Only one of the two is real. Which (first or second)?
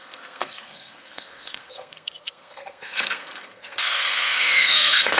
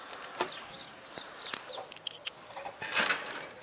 second